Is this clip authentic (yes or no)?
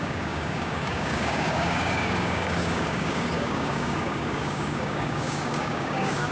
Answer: no